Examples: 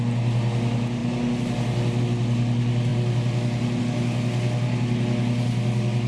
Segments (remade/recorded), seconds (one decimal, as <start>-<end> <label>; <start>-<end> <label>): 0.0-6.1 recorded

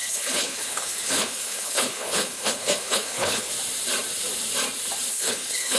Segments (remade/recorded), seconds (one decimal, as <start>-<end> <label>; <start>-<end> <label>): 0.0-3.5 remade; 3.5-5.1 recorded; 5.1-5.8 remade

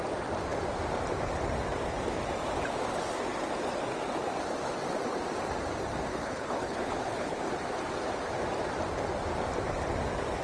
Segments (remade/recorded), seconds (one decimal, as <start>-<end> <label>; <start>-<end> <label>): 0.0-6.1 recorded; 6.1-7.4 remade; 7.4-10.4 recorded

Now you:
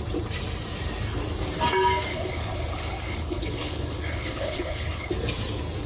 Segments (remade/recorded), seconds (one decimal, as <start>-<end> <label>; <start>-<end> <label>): 0.0-2.1 recorded; 2.1-5.1 remade; 5.1-5.9 recorded

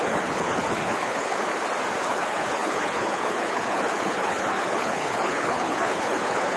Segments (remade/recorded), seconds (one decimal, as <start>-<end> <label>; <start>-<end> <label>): 0.0-1.5 remade; 1.5-2.0 recorded; 2.0-6.6 remade

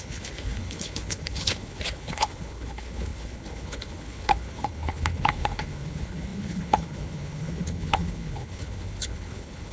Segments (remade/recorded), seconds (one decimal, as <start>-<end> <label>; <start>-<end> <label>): 0.0-9.7 remade

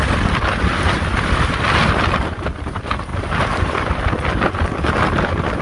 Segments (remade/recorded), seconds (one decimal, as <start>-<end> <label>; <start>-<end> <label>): 0.0-5.6 recorded

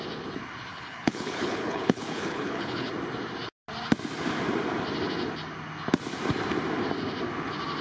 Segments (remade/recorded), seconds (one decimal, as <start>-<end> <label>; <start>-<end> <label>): 0.0-0.7 recorded; 0.7-2.9 remade; 2.9-7.8 recorded